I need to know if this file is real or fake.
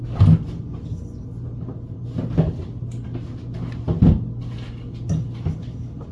real